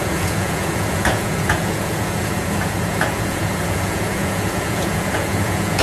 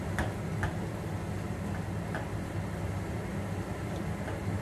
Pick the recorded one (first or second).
second